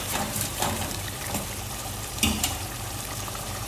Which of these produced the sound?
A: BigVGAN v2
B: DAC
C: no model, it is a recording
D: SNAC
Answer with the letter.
A